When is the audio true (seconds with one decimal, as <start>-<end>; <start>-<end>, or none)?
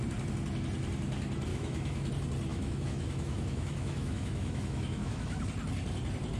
0.0-1.5; 2.1-2.5; 5.4-6.4